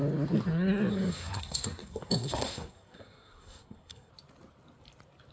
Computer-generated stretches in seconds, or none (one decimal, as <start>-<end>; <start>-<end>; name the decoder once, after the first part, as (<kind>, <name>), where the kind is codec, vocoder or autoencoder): 0.9-4.1 (codec, SNAC)